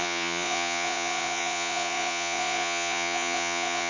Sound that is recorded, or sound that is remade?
remade